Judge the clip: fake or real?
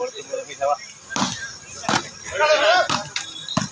real